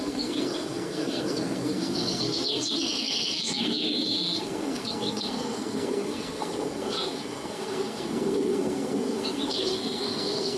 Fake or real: fake